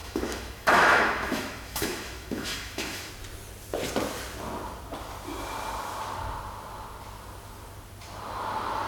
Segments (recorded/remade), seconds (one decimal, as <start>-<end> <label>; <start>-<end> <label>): 0.0-3.1 remade; 3.1-8.9 recorded